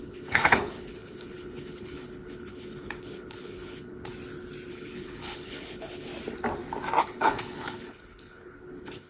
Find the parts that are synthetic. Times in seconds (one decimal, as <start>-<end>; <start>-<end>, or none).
0.0-4.1; 4.7-6.1; 7.0-9.1